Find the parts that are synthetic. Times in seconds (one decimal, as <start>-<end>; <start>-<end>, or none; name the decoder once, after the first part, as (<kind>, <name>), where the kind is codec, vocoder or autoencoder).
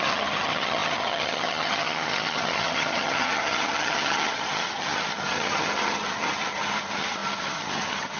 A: 0.0-8.2 (vocoder, HiFi-GAN)